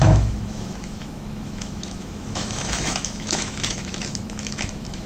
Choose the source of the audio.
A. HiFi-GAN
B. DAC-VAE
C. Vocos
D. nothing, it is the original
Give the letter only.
B